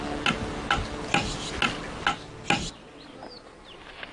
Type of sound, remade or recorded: recorded